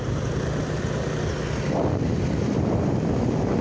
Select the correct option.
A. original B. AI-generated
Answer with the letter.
A